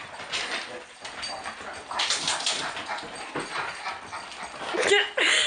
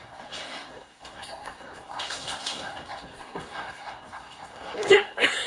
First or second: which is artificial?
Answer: second